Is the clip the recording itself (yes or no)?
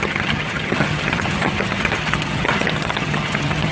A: no